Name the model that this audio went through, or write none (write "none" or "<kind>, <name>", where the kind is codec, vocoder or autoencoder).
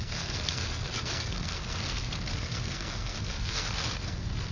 codec, SNAC